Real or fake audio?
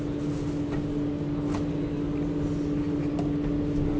real